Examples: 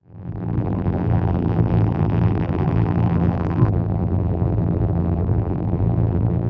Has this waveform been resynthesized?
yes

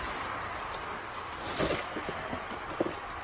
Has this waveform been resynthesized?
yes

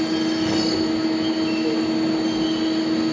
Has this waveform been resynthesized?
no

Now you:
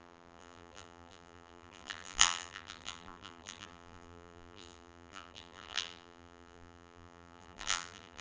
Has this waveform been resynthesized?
yes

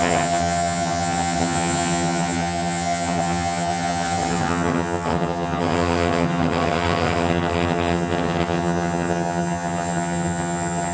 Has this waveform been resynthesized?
yes